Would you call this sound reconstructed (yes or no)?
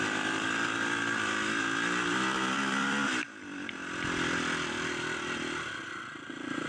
yes